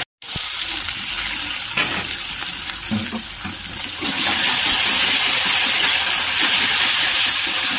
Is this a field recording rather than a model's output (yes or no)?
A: yes